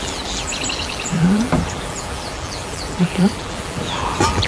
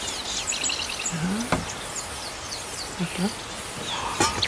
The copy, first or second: first